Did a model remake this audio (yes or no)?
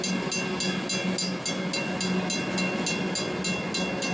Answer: no